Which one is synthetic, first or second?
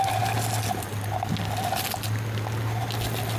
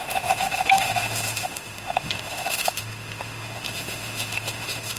second